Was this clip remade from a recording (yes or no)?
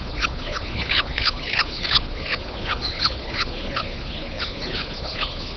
yes